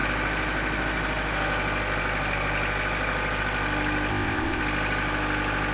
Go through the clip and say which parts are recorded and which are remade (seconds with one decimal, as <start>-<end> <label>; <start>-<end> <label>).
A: 0.0-4.1 recorded; 4.1-4.6 remade; 4.6-5.7 recorded

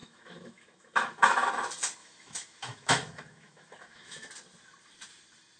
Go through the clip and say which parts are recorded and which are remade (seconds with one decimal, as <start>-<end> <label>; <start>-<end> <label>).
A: 0.0-1.5 remade; 1.5-2.0 recorded; 2.0-4.3 remade; 4.3-5.6 recorded

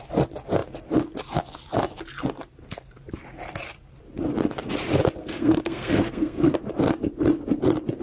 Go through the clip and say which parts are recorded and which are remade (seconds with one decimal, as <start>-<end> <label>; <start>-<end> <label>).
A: 0.0-5.2 recorded; 5.2-6.6 remade; 6.6-8.0 recorded

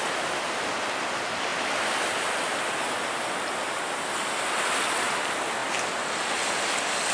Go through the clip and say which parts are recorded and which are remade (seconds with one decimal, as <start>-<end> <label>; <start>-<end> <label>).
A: 0.0-7.1 recorded

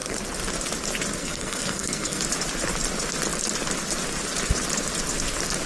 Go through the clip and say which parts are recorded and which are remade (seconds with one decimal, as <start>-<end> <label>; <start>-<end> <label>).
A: 0.0-1.2 recorded; 1.2-2.2 remade; 2.2-5.7 recorded